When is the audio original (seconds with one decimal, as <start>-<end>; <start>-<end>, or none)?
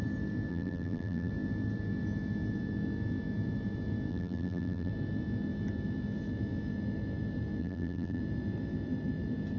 0.0-0.5; 1.3-4.1; 4.9-7.6; 8.2-9.6